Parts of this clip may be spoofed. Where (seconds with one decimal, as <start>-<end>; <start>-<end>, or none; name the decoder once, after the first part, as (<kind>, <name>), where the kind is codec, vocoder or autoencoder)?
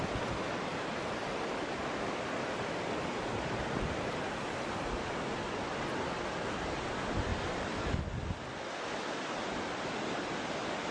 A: none